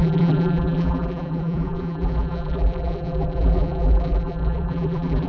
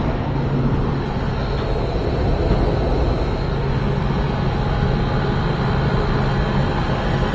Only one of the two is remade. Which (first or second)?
first